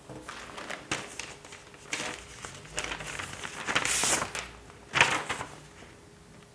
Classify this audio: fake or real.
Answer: real